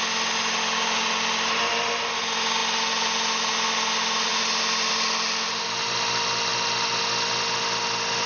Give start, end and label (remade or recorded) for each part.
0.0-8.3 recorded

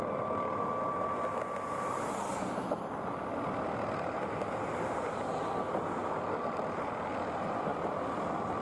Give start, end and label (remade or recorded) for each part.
0.0-8.6 recorded